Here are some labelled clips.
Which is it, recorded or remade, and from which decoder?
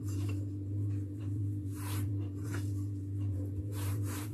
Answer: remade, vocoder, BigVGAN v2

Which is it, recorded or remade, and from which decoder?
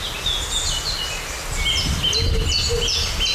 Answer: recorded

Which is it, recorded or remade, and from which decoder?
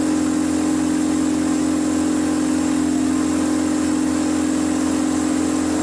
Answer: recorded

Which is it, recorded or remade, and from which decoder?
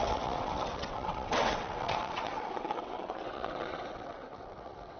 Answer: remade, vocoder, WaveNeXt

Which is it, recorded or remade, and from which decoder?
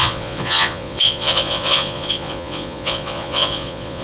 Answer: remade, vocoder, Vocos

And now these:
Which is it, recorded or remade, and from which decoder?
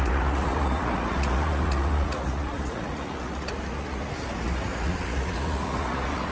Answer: remade, vocoder, Vocos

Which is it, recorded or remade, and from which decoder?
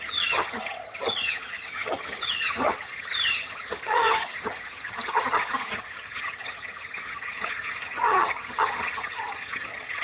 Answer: remade, vocoder, HiFi-GAN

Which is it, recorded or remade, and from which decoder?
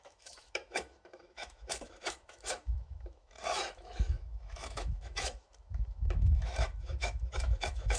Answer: remade, autoencoder, DAC-VAE